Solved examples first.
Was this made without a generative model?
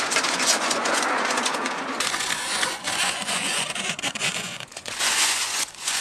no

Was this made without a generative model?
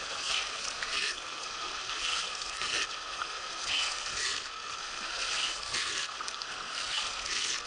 no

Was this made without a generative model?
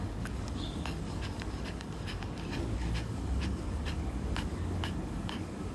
no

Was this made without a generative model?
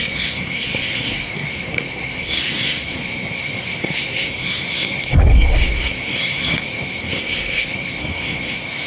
no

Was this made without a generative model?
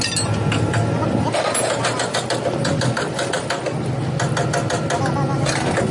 yes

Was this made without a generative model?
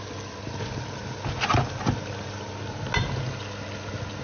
yes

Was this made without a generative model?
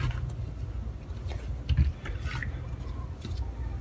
yes